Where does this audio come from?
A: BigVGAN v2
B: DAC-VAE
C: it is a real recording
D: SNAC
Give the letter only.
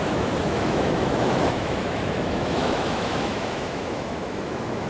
B